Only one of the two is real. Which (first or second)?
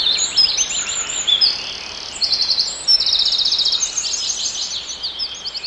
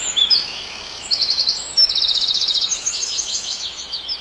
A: first